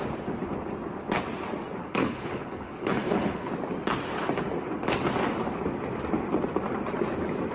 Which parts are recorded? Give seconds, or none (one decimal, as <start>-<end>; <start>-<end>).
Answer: 0.0-1.8; 3.5-7.5